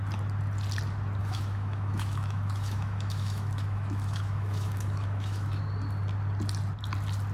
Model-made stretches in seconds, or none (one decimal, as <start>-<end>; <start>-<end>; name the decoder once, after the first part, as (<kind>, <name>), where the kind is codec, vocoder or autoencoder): 1.2-5.6 (autoencoder, DAC-VAE)